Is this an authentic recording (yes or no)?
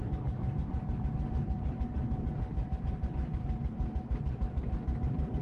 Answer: yes